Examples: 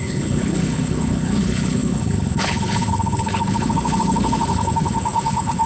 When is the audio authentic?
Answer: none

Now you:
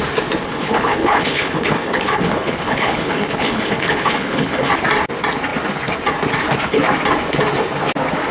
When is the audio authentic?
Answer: 0.0-0.4; 4.7-8.3

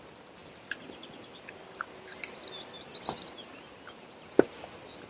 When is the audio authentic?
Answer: 0.0-5.1

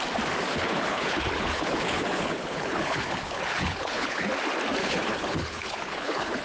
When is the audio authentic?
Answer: 0.0-0.5; 4.3-4.8

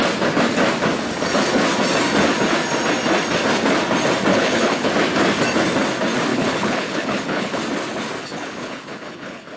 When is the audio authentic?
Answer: 0.0-4.3; 4.9-6.3; 7.6-8.2

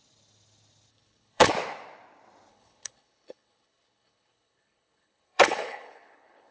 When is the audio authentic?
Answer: 0.0-0.9; 1.5-2.5

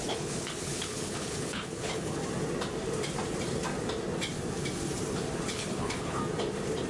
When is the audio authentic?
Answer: 2.2-5.5; 6.2-6.9

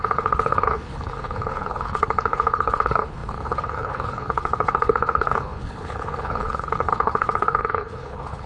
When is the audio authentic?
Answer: none